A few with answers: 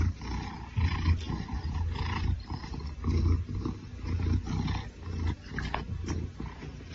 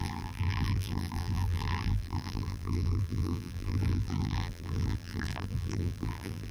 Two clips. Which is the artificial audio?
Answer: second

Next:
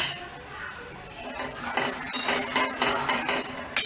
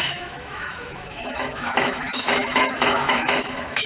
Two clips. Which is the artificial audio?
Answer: second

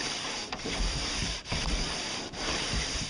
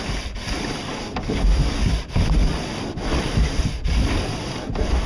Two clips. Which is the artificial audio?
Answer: first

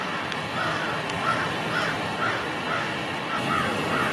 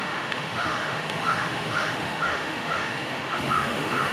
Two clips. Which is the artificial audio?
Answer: second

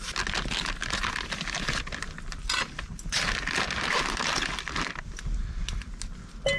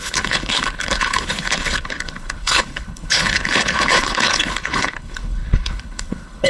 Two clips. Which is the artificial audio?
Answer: second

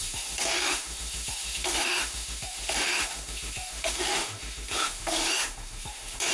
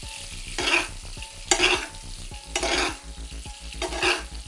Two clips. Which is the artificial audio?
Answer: first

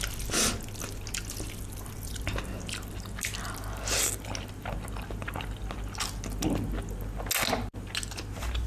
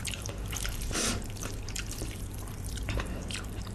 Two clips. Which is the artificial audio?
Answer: second